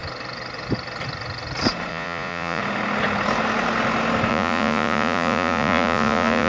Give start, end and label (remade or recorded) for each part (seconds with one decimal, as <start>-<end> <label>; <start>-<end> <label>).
0.0-1.9 recorded; 1.9-2.6 remade; 2.6-4.3 recorded; 4.3-6.5 remade